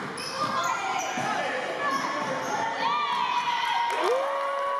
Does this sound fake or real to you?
real